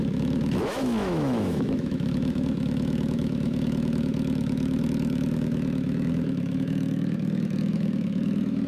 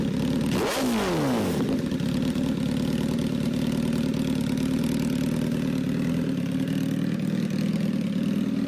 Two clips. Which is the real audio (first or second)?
second